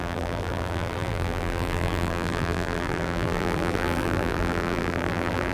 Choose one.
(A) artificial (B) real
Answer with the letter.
A